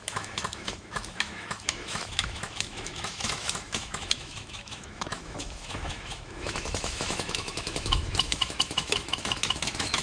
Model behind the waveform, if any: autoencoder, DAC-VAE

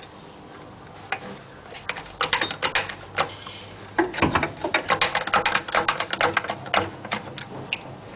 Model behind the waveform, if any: none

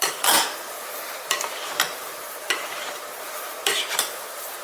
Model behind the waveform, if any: vocoder, BigVGAN v2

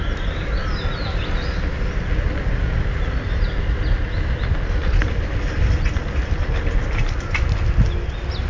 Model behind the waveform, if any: none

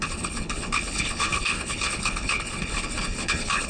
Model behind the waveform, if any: codec, HILCodec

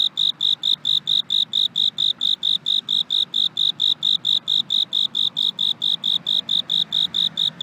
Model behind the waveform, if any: none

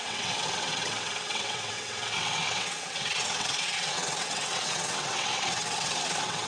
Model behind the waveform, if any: vocoder, WaveNeXt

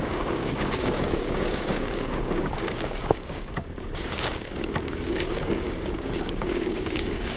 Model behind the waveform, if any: codec, DAC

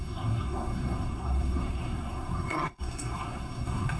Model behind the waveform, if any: codec, SNAC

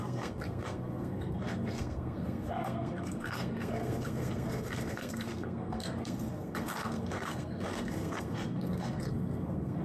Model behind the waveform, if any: codec, SNAC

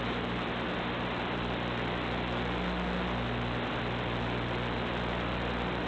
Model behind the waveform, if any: none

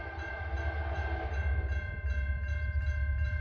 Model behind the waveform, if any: vocoder, BigVGAN v2